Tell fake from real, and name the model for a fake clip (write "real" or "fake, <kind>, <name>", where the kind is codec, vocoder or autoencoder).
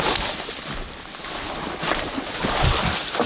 real